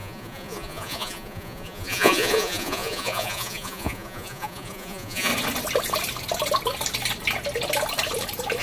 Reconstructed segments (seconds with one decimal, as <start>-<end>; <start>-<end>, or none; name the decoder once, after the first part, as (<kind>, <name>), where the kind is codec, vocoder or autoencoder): 0.0-5.3 (vocoder, Vocos)